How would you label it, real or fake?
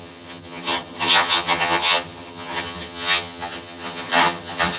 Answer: fake